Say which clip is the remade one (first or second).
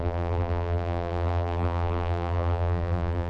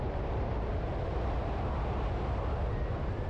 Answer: first